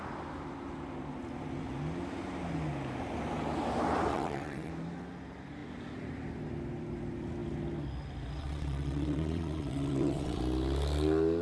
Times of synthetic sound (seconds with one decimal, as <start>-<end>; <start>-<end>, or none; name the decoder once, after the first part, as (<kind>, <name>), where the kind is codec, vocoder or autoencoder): 4.1-4.7 (vocoder, WaveNeXt); 8.4-10.4